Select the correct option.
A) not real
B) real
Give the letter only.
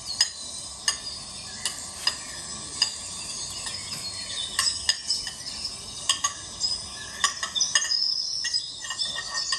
B